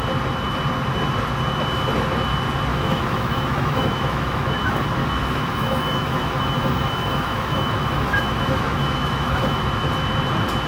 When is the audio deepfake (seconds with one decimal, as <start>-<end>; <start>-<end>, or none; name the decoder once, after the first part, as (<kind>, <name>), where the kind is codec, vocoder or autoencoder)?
2.7-4.5 (autoencoder, DAC-VAE); 5.0-9.6